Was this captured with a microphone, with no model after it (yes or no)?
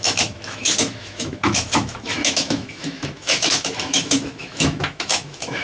no